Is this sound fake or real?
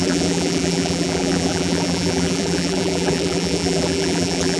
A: fake